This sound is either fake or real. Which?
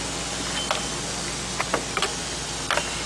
real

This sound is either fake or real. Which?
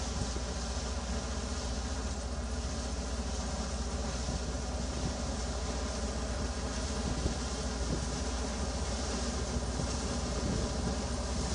real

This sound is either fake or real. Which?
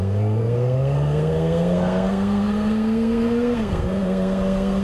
fake